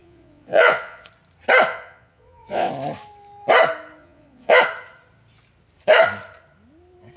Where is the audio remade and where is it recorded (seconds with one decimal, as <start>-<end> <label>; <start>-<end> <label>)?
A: 0.0-1.1 remade; 1.1-1.7 recorded; 1.7-2.7 remade; 2.7-4.0 recorded; 4.0-4.6 remade; 4.6-7.2 recorded